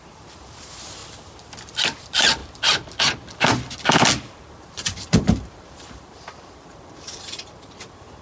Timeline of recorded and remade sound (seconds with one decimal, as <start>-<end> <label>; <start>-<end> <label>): 0.0-1.0 remade; 1.0-2.0 recorded; 2.0-2.4 remade; 2.4-4.2 recorded; 4.2-8.2 remade